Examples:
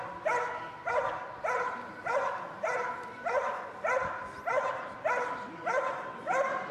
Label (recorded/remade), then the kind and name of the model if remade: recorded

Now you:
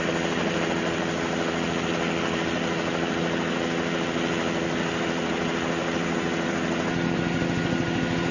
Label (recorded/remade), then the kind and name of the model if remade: recorded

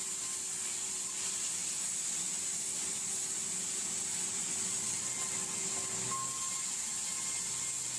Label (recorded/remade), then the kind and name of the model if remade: recorded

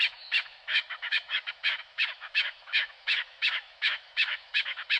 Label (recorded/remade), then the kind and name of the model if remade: remade, autoencoder, DAC-VAE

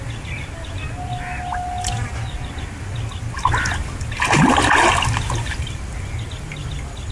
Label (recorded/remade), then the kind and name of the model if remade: recorded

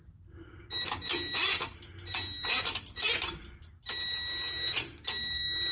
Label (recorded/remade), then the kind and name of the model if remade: recorded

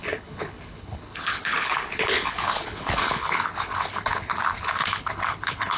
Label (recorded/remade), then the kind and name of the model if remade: remade, codec, HILCodec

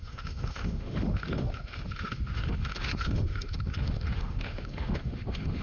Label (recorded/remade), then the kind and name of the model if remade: remade, autoencoder, DAC-VAE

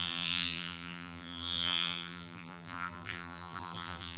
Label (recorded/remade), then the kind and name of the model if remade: remade, vocoder, BigVGAN v2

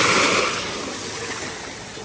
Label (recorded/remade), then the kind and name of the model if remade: recorded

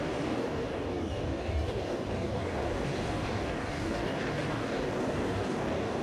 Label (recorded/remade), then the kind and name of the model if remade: remade, codec, DAC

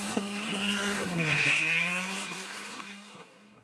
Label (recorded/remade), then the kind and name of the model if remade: remade, codec, SNAC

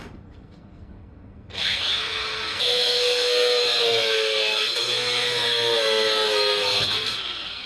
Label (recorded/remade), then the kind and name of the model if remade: remade, codec, SNAC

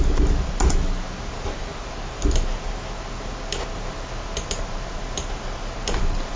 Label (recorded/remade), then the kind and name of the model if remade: recorded